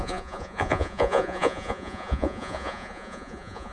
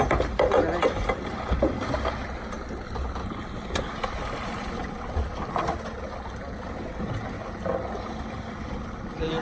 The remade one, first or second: first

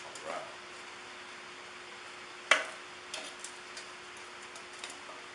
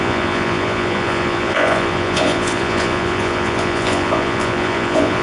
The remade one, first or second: second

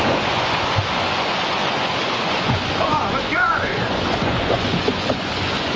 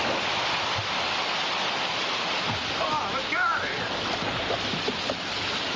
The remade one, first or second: first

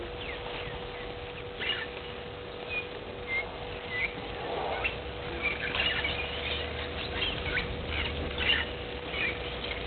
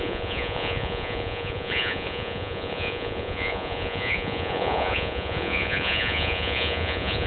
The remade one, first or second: second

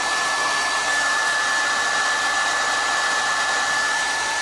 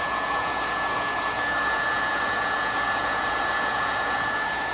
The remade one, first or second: second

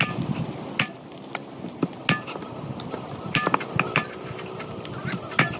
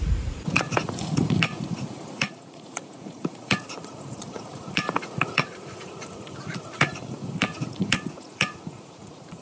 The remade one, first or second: second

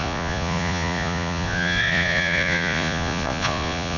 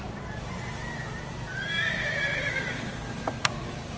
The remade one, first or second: first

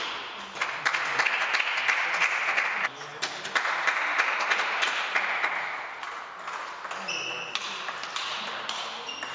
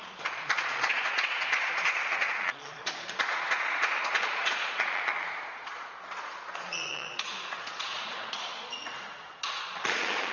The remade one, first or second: second